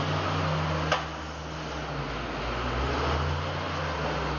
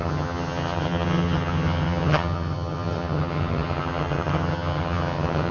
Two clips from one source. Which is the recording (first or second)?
first